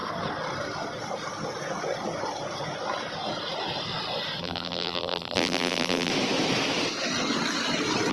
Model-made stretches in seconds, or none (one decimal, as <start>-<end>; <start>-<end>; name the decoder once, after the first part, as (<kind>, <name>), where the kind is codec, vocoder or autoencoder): 4.4-6.1 (vocoder, BigVGAN v2)